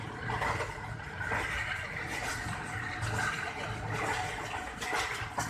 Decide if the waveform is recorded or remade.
recorded